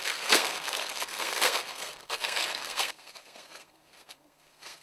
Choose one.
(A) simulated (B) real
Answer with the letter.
A